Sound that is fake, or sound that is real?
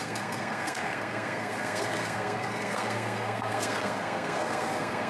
fake